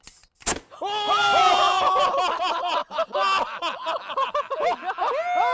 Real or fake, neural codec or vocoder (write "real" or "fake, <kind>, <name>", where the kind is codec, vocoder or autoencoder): real